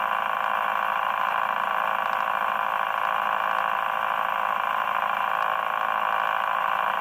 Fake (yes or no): no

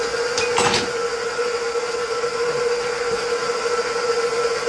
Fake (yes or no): no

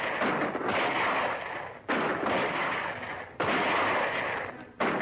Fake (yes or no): no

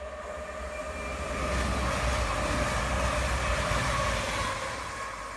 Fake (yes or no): no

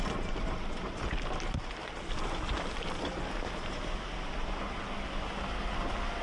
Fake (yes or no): no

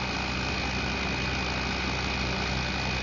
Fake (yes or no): no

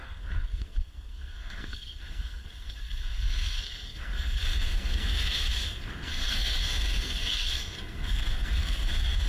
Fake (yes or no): yes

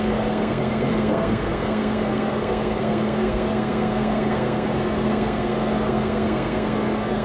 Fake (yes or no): yes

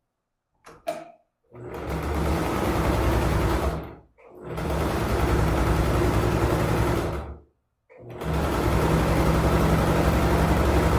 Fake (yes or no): no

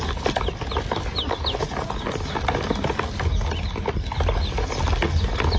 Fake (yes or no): no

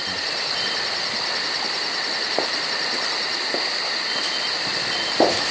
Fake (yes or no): no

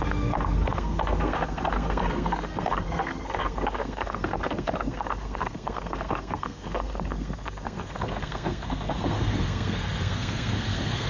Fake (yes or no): yes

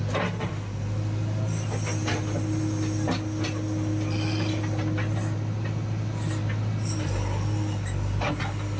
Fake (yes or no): no